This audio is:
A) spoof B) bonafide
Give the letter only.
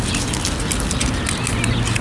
B